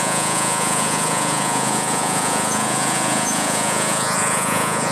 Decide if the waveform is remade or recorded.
remade